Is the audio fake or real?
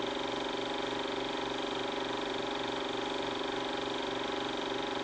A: real